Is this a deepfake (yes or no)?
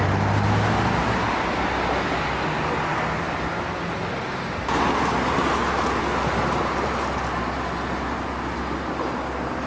no